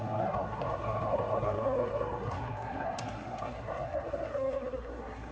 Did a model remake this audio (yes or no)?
yes